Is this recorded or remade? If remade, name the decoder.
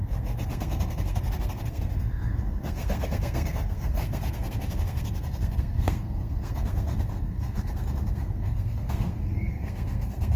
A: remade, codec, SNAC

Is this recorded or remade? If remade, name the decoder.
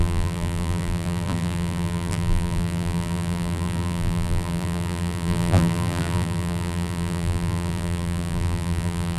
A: remade, vocoder, BigVGAN v2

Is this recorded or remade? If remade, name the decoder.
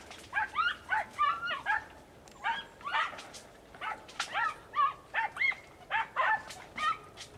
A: recorded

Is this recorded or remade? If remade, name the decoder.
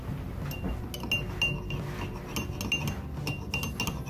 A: recorded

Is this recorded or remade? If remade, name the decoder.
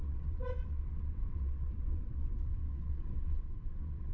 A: remade, vocoder, WaveNeXt